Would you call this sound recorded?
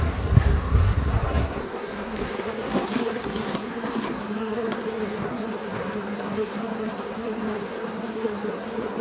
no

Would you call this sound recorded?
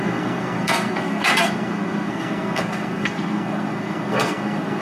no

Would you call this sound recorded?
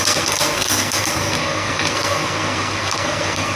no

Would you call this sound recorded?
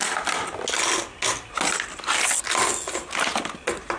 yes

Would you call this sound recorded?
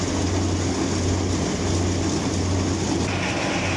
yes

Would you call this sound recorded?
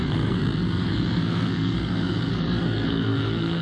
no